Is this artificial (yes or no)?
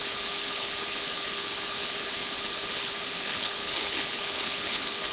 yes